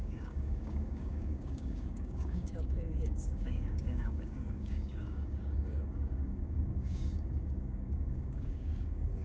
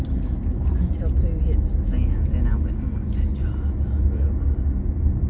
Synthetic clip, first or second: first